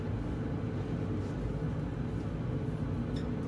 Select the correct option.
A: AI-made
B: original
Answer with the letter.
B